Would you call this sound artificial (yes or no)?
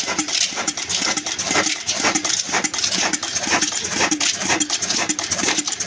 yes